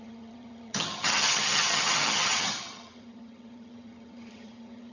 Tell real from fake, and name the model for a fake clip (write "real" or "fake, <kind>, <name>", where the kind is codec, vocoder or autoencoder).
fake, vocoder, HiFi-GAN